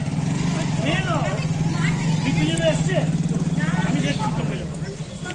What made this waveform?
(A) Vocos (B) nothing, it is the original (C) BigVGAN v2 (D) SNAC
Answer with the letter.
B